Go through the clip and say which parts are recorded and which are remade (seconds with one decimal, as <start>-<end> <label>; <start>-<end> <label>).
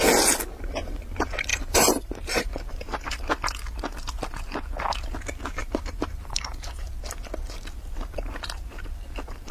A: 0.0-1.5 recorded; 1.5-2.4 remade; 2.4-5.6 recorded; 5.6-7.0 remade; 7.0-9.5 recorded